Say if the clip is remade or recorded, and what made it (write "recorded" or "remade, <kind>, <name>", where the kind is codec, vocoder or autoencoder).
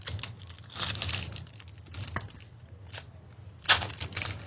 recorded